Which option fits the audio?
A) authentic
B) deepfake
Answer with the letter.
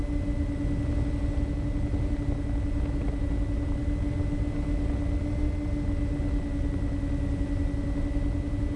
A